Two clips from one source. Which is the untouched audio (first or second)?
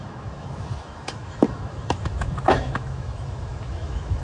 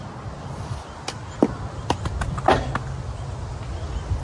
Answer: second